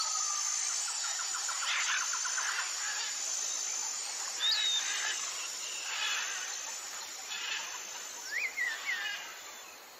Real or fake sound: real